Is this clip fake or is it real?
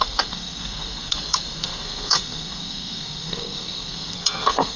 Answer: fake